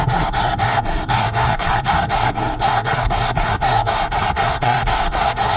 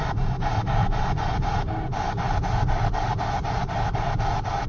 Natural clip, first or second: second